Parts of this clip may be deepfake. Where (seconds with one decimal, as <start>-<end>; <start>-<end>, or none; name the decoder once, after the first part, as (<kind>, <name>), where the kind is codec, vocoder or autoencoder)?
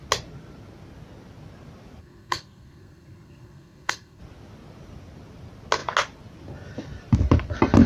2.0-4.2 (codec, SNAC)